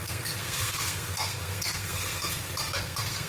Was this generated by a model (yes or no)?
yes